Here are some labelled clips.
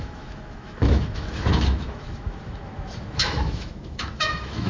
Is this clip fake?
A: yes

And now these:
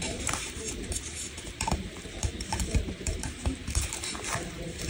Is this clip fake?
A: yes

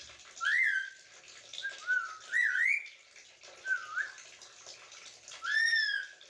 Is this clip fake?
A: no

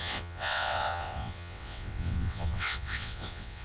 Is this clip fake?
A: yes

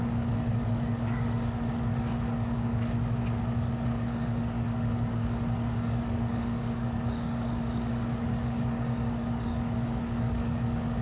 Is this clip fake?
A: yes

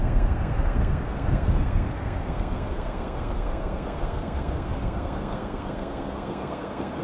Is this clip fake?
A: yes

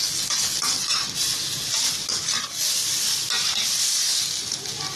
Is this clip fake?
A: no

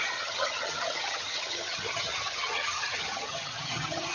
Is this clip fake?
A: yes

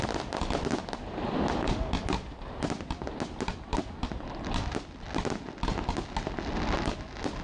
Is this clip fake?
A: no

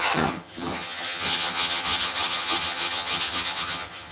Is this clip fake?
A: yes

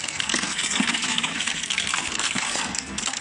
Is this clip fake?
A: yes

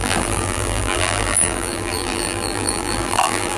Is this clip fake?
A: yes